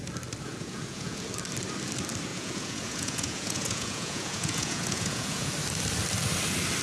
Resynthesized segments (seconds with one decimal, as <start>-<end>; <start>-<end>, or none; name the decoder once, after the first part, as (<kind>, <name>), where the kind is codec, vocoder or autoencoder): 0.5-1.2 (vocoder, Vocos); 2.3-5.5